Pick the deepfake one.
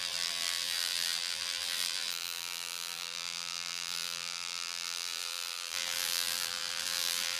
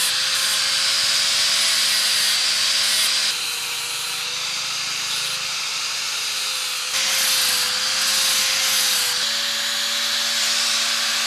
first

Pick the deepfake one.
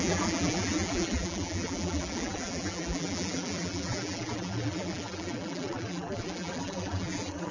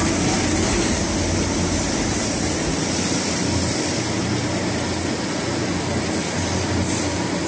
first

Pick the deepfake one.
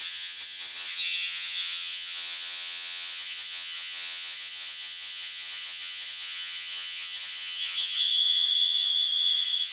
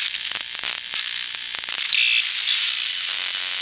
first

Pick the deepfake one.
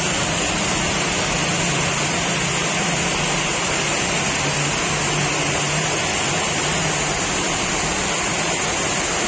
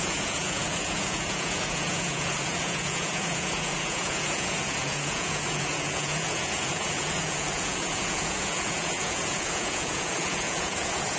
second